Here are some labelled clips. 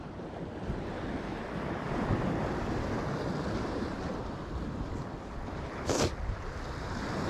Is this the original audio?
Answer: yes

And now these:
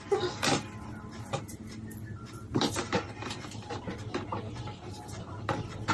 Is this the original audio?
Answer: yes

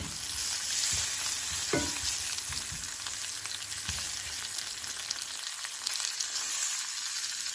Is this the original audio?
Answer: yes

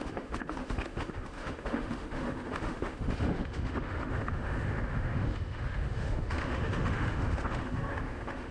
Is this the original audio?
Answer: no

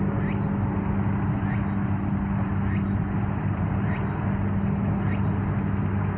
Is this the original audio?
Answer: yes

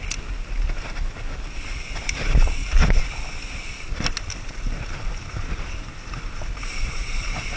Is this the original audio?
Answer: yes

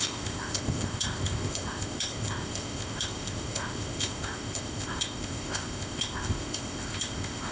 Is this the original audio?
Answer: no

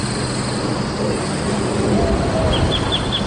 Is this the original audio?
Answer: yes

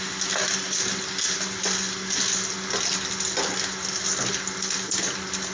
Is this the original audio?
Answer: yes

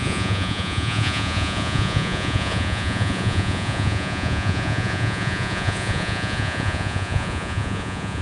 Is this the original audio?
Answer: no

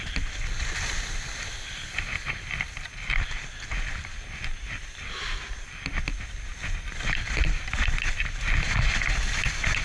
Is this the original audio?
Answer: yes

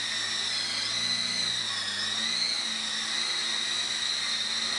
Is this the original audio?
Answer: yes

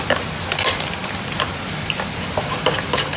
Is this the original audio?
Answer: yes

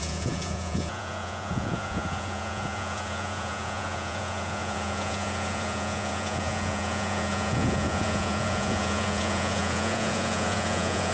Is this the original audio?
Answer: no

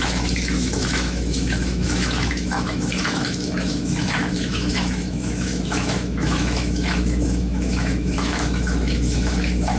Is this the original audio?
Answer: no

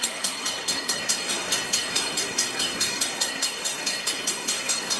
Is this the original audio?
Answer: no